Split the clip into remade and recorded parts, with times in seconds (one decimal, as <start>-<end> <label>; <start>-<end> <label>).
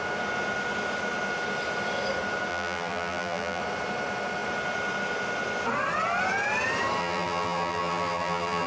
0.0-2.5 recorded; 2.5-3.6 remade; 3.6-7.0 recorded; 7.0-8.7 remade